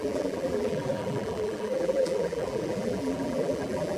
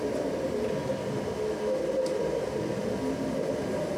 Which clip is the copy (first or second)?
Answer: first